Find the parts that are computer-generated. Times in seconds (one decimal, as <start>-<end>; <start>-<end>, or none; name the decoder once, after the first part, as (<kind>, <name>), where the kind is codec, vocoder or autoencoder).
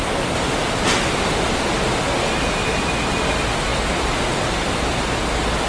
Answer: none